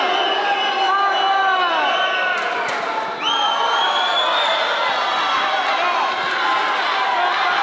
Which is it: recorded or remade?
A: recorded